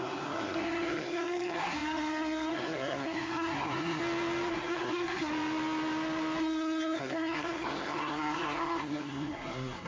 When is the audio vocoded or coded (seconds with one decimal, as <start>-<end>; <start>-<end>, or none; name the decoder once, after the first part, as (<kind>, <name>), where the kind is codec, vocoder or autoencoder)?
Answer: 0.0-4.0 (codec, SNAC); 4.5-5.3; 6.4-9.9